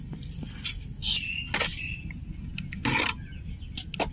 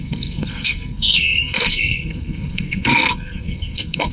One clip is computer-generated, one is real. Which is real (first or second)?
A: first